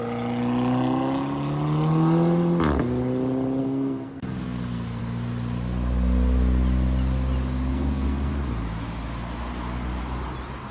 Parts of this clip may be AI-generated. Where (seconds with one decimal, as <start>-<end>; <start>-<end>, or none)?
3.6-5.0; 7.7-8.3

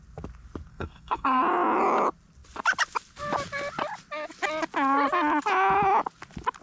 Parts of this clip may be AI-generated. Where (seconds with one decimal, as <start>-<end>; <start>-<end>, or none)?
0.7-1.4